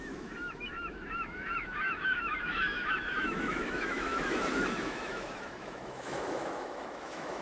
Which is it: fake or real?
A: fake